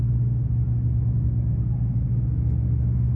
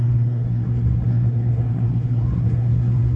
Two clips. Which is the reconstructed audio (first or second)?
second